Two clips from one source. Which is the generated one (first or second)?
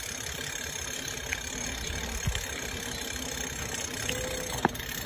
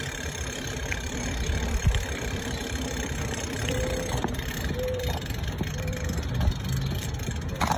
second